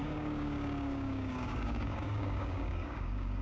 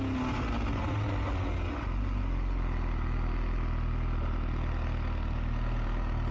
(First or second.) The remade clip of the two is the first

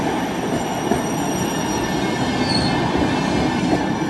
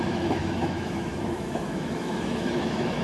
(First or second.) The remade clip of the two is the second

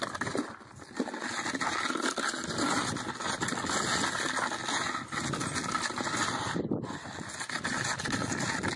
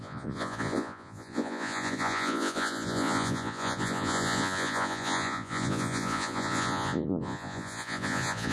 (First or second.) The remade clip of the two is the second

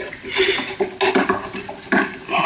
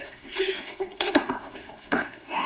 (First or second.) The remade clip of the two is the second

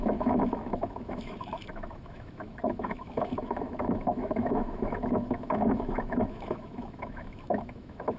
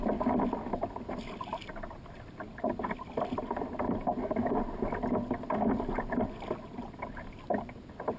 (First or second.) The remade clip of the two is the first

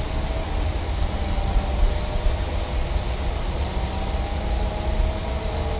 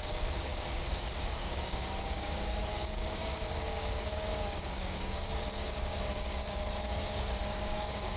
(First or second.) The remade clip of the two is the second